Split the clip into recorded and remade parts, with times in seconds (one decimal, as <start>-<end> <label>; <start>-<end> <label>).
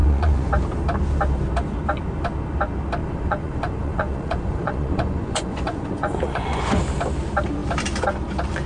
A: 0.0-0.5 remade; 0.5-3.0 recorded; 3.0-6.8 remade; 6.8-8.7 recorded